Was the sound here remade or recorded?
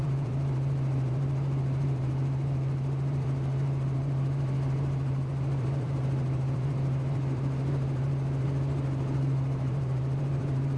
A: remade